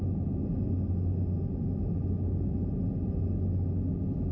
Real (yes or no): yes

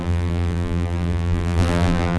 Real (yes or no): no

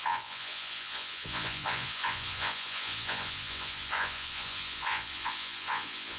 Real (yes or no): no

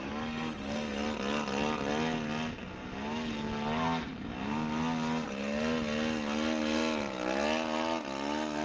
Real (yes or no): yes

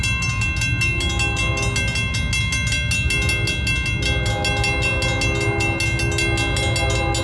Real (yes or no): yes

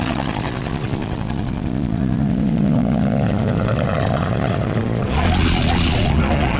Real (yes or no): no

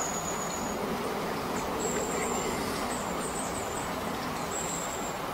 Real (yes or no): yes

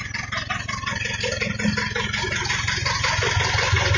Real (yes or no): yes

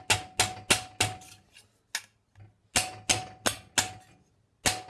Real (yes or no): yes